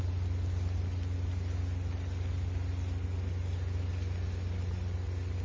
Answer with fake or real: real